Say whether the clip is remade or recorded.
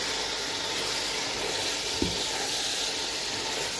recorded